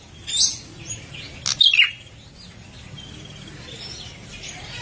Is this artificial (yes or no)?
no